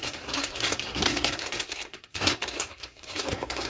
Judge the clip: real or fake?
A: fake